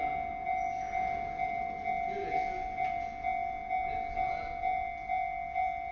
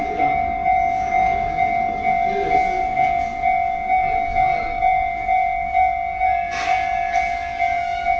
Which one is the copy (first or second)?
second